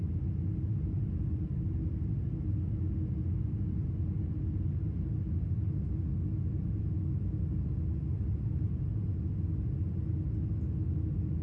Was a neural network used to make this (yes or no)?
no